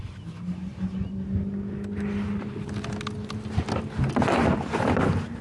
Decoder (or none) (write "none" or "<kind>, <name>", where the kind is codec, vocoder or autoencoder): none